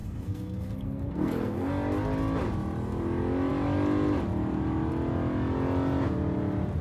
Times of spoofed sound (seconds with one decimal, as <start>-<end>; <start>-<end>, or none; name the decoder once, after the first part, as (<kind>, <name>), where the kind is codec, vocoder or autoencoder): 0.0-1.7 (codec, SNAC)